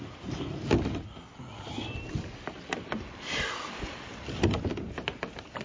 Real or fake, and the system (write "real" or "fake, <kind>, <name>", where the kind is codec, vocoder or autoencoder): real